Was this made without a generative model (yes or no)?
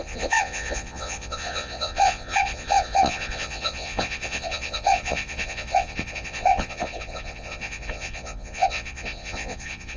no